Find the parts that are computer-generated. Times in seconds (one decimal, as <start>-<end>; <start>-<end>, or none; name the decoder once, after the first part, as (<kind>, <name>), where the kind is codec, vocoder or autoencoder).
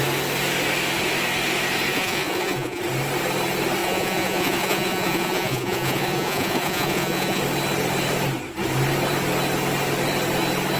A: 1.9-2.8 (vocoder, Vocos); 3.8-7.4